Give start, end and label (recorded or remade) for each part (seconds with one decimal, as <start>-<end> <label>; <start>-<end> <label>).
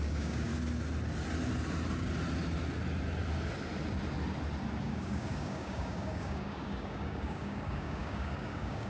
0.0-0.5 remade; 0.5-4.8 recorded; 4.8-8.9 remade